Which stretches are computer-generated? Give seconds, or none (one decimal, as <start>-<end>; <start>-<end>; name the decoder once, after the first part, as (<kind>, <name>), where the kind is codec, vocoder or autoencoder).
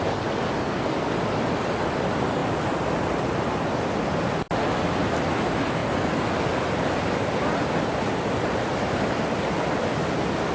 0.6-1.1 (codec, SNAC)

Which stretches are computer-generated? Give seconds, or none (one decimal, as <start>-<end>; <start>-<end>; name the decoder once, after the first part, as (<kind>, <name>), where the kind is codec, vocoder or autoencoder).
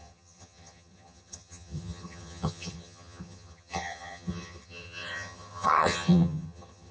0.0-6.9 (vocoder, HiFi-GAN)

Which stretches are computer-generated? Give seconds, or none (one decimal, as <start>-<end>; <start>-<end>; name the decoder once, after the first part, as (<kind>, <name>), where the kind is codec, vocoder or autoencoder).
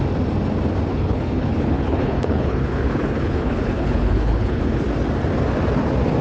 0.9-4.6 (codec, HILCodec)